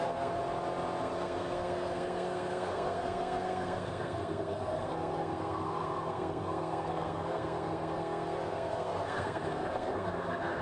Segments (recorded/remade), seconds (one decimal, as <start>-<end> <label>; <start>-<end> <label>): 0.0-0.4 remade; 0.4-1.0 recorded; 1.0-10.6 remade